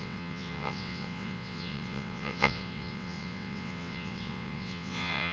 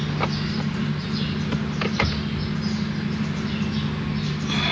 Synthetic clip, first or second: first